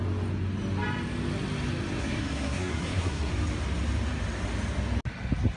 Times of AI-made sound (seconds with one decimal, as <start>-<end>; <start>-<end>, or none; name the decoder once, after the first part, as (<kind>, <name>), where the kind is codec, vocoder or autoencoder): 2.0-3.3 (codec, SNAC)